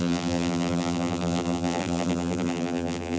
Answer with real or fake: fake